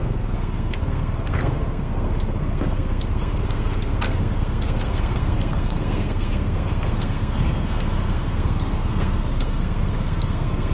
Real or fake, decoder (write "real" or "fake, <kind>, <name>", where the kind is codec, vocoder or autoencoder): fake, codec, SNAC